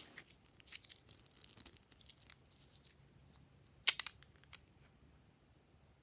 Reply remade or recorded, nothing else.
recorded